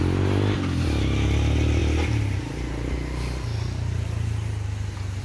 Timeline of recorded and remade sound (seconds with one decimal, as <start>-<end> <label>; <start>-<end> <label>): 0.0-5.2 recorded